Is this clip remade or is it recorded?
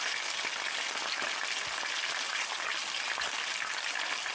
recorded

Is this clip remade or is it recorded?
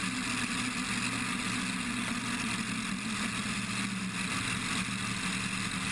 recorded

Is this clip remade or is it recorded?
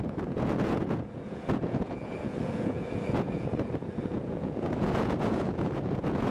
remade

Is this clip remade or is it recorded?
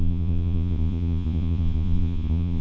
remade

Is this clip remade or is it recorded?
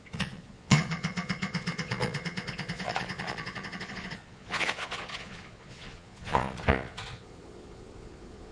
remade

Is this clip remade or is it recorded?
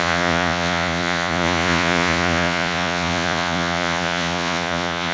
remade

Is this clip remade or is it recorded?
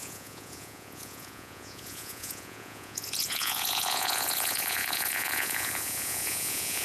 remade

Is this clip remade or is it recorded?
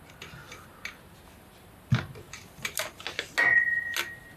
recorded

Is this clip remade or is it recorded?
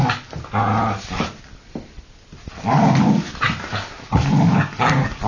recorded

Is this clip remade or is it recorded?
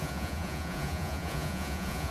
remade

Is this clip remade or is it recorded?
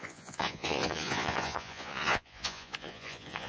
remade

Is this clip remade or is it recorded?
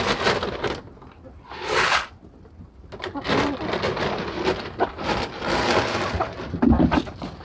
recorded